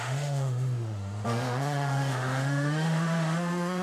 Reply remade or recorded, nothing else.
remade